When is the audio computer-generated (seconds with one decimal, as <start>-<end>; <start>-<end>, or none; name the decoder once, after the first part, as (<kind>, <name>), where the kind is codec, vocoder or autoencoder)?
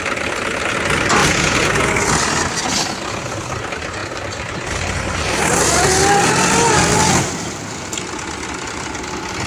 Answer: 1.2-1.9 (vocoder, Vocos)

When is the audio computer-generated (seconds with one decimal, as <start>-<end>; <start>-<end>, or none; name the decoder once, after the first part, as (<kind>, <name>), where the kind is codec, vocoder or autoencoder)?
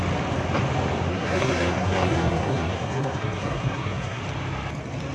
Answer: 1.1-4.2 (codec, SNAC)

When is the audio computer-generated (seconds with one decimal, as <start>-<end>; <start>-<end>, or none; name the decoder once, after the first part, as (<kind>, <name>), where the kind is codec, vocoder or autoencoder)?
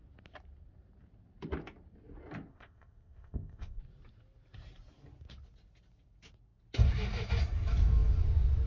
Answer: 2.5-3.8 (codec, ZipCodec)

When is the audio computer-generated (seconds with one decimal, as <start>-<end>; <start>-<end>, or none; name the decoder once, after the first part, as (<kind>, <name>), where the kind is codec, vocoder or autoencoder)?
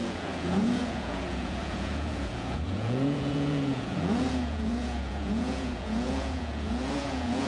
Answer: 0.0-7.5 (vocoder, Vocos)